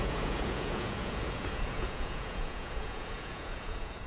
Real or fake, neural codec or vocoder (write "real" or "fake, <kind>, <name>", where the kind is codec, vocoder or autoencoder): fake, vocoder, Vocos